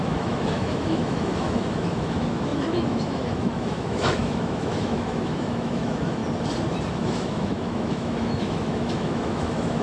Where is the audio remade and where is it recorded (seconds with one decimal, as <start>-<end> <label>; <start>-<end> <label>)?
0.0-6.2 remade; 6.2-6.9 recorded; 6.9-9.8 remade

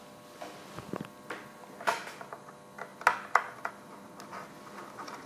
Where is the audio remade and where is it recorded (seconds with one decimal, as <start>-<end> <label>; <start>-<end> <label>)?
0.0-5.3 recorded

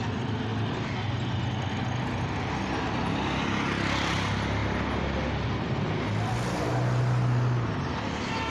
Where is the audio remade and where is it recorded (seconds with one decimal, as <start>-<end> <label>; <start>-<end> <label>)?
0.0-8.5 recorded

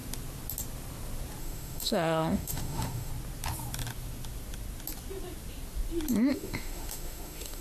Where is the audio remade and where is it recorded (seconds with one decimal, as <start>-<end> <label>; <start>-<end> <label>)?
0.0-1.4 recorded; 1.4-3.1 remade; 3.1-6.3 recorded; 6.3-7.6 remade